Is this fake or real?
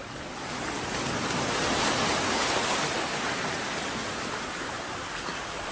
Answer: real